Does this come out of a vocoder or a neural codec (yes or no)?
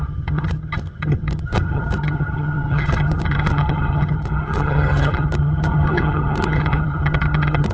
yes